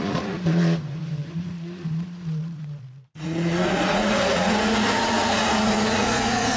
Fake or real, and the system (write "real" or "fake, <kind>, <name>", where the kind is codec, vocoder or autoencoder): fake, vocoder, Vocos